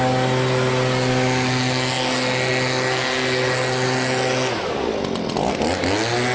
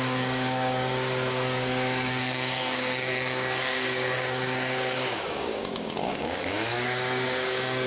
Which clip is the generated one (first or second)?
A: second